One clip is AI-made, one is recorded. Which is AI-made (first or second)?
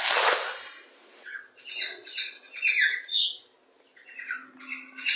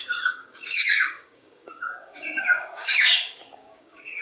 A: second